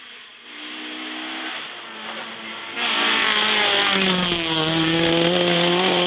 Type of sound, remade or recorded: recorded